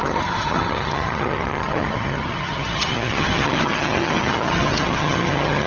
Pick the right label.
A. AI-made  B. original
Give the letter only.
A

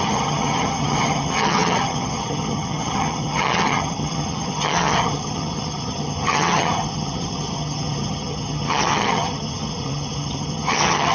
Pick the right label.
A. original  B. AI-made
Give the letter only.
B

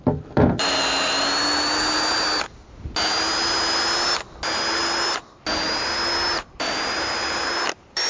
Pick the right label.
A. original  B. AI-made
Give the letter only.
A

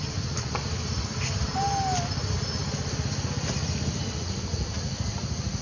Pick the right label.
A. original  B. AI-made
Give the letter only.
A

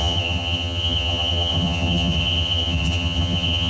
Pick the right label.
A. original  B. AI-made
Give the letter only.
B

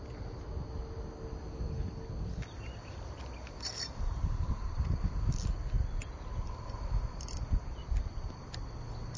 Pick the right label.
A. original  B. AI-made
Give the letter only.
A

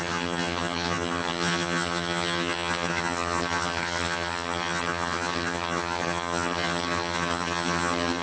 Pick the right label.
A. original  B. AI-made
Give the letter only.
B